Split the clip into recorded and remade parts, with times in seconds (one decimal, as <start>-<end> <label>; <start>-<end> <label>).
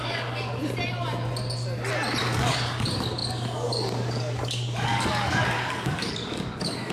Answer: 0.0-0.6 remade; 0.6-2.2 recorded; 2.2-6.9 remade